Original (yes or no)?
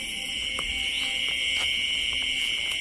yes